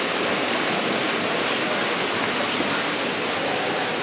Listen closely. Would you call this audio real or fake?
fake